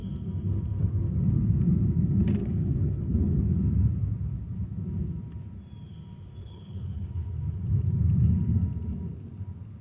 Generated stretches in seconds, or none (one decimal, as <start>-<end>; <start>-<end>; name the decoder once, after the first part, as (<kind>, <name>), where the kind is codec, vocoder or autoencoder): 2.4-3.4 (codec, HILCodec); 6.4-7.3